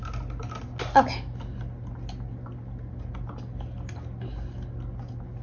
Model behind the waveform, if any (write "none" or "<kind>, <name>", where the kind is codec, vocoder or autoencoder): none